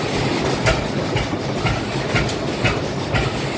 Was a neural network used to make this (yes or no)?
no